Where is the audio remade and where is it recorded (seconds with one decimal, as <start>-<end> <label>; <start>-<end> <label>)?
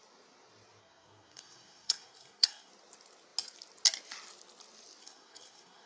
0.0-0.8 recorded; 0.8-2.7 remade; 2.7-5.0 recorded; 5.0-5.9 remade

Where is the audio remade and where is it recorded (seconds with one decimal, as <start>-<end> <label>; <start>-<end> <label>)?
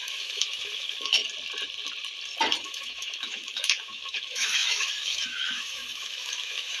0.0-1.2 remade; 1.2-2.6 recorded; 2.6-6.8 remade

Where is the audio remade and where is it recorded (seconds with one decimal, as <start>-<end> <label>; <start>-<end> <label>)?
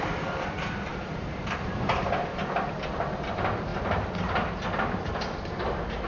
0.0-0.9 recorded; 0.9-2.1 remade; 2.1-6.1 recorded